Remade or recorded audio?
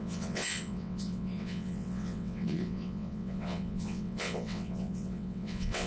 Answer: remade